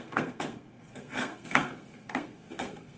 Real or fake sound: fake